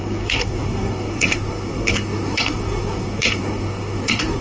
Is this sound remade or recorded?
remade